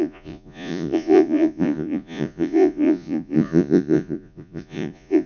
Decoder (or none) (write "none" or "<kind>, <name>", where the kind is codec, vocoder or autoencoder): vocoder, Vocos